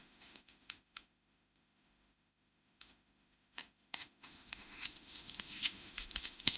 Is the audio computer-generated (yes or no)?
yes